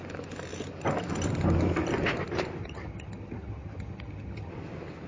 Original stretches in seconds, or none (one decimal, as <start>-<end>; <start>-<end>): 0.0-2.6; 4.5-5.1